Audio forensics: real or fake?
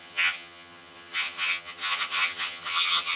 fake